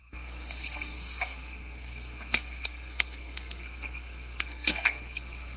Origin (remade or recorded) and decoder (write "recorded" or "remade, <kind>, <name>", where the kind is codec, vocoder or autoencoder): remade, codec, SNAC